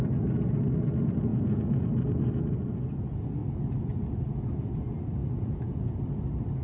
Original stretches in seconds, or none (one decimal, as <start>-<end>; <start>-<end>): 0.0-1.3; 1.9-5.2; 6.0-6.6